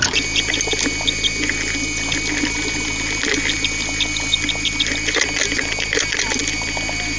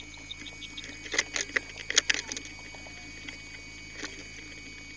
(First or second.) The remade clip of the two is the first